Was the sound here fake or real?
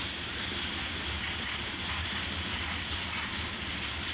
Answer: real